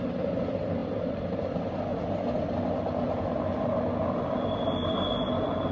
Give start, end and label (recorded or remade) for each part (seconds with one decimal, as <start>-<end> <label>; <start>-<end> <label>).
0.0-0.8 recorded; 0.8-1.4 remade; 1.4-5.7 recorded

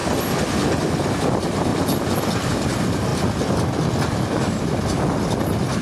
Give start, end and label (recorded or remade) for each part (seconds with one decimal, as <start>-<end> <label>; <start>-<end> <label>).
0.0-1.7 recorded; 1.7-2.5 remade; 2.5-5.8 recorded

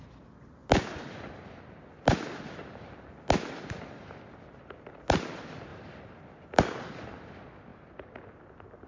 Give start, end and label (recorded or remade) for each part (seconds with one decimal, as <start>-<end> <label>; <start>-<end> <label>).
0.0-5.7 recorded; 5.7-6.6 remade; 6.6-8.9 recorded

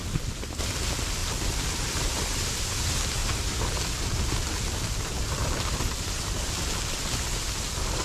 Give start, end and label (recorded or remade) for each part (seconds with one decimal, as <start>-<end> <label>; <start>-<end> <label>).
0.0-1.2 recorded; 1.2-2.8 remade; 2.8-3.2 recorded; 3.2-6.8 remade; 6.8-8.0 recorded

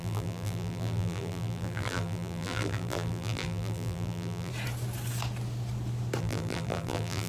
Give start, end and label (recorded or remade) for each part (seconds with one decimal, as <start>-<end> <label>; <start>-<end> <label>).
0.0-4.5 remade; 4.5-6.2 recorded; 6.2-7.3 remade